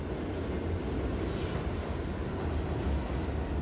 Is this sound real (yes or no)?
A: yes